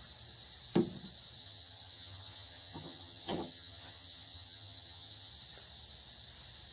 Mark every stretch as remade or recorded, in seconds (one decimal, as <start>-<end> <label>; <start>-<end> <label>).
0.0-1.4 recorded; 1.4-5.3 remade; 5.3-6.7 recorded